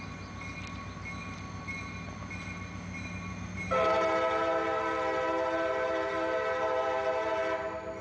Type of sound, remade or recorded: recorded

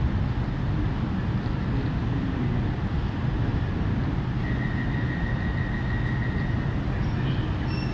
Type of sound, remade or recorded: recorded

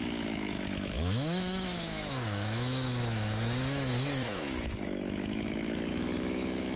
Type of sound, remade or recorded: remade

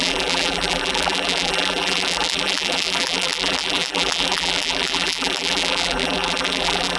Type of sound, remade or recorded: remade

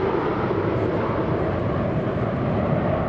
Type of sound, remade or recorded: recorded